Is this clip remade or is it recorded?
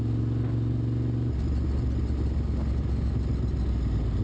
recorded